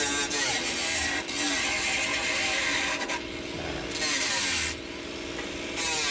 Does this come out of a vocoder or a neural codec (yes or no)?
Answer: no